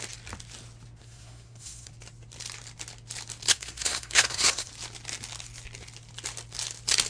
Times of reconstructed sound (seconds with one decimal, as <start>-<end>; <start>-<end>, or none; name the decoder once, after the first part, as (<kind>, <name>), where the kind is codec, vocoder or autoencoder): 1.0-1.9 (codec, SNAC); 3.5-4.7

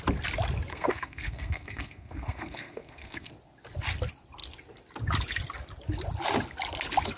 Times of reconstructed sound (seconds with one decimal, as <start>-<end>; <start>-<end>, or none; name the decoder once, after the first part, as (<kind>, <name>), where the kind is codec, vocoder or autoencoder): 0.7-3.3 (codec, SNAC)